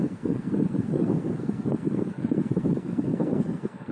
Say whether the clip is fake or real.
fake